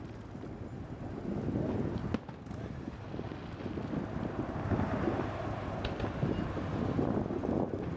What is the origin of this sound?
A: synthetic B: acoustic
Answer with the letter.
B